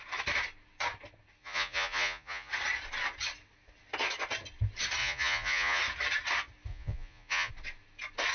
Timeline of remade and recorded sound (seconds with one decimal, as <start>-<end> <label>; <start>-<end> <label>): 0.0-1.4 recorded; 1.4-2.5 remade; 2.5-5.0 recorded; 5.0-5.8 remade; 5.8-6.7 recorded; 6.7-7.5 remade; 7.5-8.3 recorded